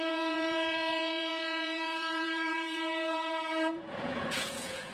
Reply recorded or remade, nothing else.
remade